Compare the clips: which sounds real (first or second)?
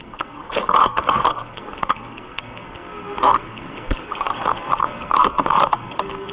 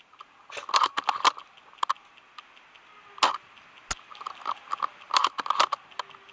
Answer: second